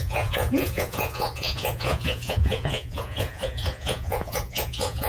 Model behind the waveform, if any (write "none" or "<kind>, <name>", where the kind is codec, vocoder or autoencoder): vocoder, Vocos